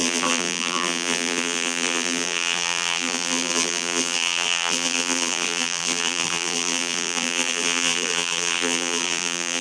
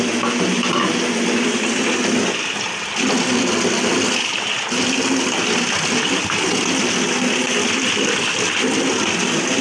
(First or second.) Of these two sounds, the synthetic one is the first